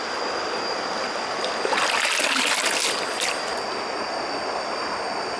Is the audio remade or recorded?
recorded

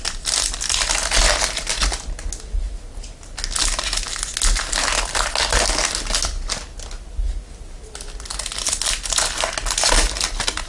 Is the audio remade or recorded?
recorded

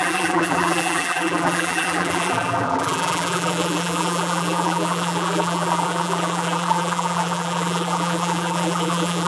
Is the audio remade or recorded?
remade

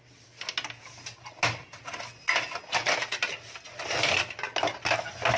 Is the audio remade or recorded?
recorded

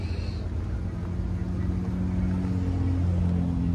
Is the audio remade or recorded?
recorded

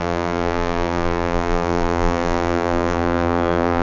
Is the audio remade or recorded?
remade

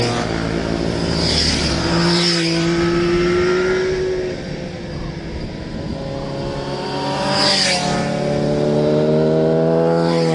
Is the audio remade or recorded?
recorded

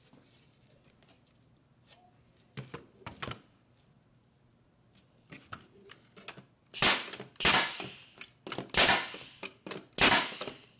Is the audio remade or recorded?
recorded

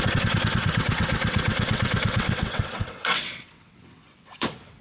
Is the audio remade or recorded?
remade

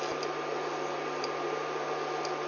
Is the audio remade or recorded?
recorded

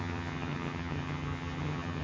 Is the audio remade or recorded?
remade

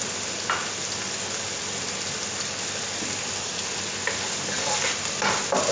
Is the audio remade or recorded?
recorded